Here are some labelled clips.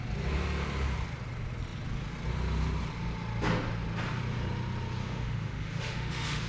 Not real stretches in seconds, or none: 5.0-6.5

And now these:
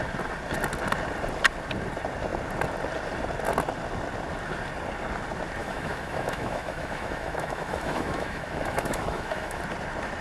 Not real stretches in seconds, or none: 5.6-9.6

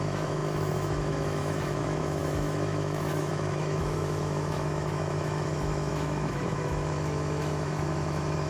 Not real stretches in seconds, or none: 0.0-8.5

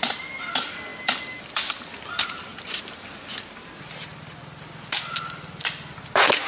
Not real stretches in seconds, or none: none

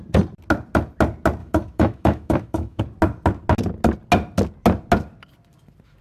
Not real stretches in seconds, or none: 1.4-2.8

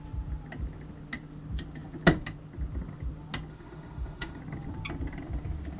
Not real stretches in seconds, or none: 3.5-4.4

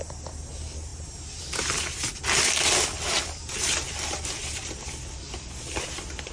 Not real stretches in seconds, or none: none